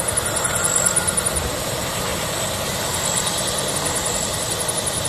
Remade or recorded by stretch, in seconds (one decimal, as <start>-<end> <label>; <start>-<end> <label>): 0.0-5.1 remade